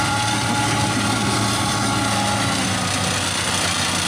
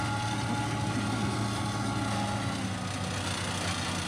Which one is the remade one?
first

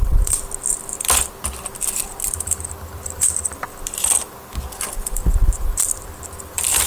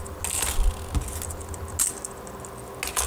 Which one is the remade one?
first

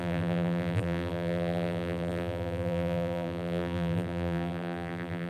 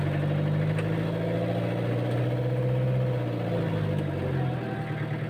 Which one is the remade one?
first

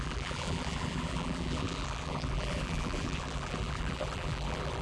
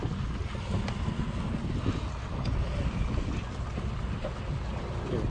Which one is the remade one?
first